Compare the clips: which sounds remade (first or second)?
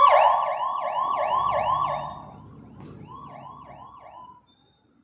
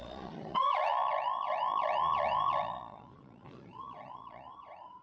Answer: second